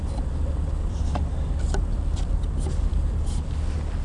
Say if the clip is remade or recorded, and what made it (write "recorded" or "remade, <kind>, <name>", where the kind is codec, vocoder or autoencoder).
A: recorded